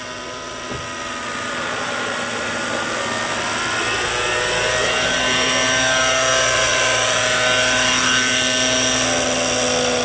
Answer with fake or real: real